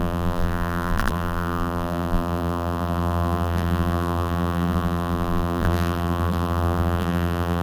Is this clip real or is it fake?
fake